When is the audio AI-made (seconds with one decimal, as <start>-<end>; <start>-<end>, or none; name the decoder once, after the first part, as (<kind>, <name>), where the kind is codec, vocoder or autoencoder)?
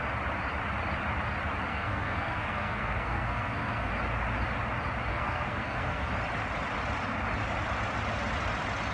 1.7-3.9 (codec, SNAC); 5.1-6.1